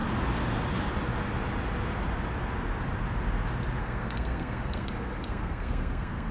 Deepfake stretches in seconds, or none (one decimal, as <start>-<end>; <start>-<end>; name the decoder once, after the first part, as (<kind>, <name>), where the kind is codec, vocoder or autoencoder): 3.8-6.3 (codec, SNAC)